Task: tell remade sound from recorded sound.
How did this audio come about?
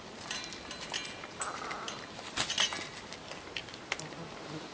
recorded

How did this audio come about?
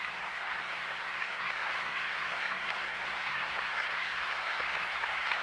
remade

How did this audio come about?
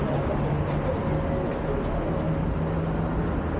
recorded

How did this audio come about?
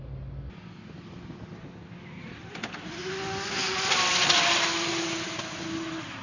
recorded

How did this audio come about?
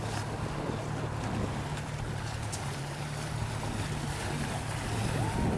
recorded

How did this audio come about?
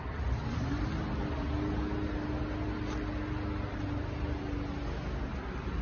recorded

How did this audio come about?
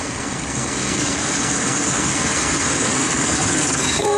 remade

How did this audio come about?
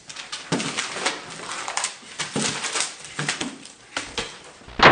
recorded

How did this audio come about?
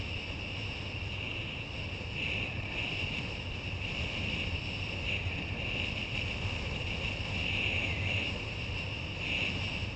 recorded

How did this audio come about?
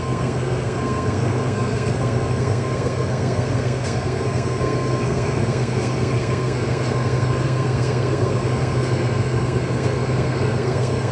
remade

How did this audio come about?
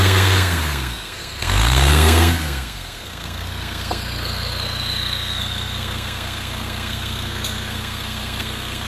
remade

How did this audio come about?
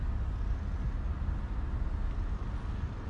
recorded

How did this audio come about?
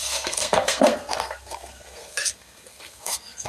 remade